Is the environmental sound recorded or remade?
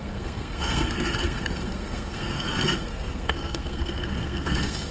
remade